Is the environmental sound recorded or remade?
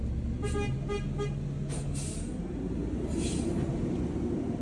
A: recorded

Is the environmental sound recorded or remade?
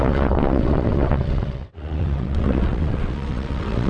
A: remade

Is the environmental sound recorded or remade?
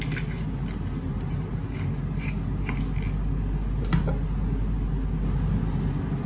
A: recorded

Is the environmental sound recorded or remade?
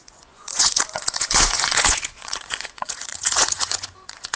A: remade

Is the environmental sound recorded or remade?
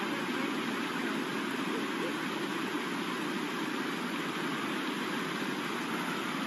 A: recorded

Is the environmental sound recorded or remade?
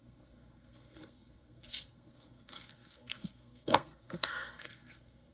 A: remade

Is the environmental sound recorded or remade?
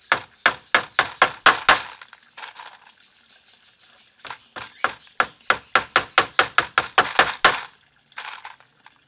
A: recorded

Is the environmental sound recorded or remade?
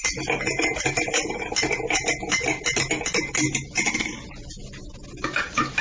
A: recorded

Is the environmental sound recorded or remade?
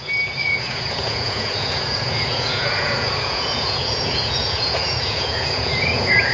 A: remade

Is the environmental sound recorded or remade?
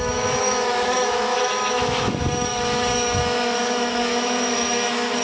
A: remade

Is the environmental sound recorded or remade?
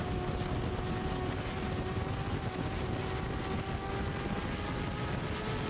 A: recorded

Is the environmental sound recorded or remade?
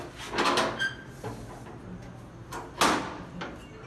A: recorded